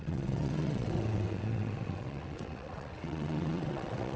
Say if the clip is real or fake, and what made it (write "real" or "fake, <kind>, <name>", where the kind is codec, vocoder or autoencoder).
fake, vocoder, WaveNeXt